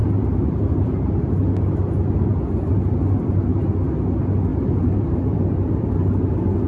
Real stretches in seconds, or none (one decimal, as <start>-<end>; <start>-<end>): 1.3-4.5; 5.4-6.7